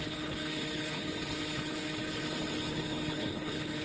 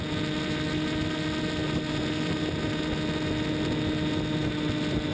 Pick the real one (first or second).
second